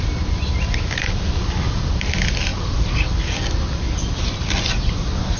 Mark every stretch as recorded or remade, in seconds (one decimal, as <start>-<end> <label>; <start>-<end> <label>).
0.0-5.4 recorded